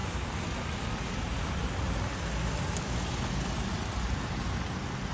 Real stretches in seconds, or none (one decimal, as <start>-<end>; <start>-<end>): 0.0-5.1